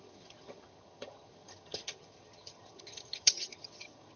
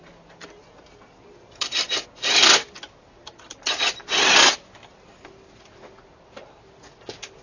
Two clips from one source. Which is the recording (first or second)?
second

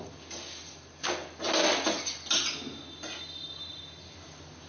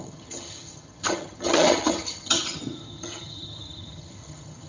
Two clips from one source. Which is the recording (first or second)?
first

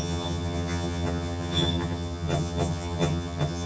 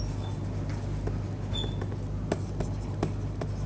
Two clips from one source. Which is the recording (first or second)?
second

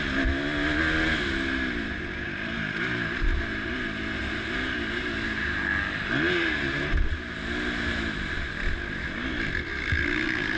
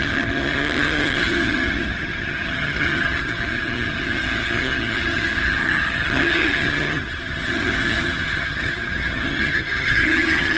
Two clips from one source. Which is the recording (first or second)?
first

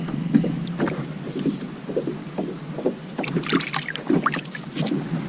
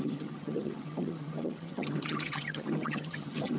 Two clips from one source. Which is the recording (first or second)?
first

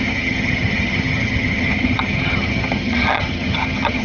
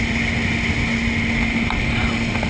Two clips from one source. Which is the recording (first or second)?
second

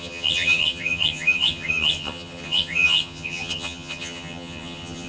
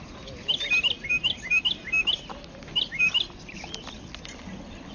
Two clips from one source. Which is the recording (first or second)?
second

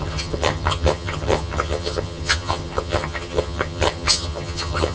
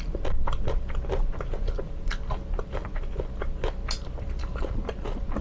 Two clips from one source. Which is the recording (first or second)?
second